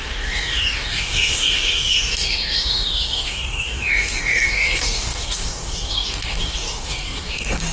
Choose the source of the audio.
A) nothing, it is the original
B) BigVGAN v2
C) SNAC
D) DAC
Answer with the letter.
D